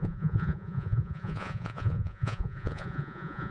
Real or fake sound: fake